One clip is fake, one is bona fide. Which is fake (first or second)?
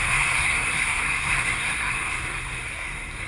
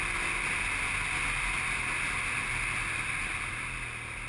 first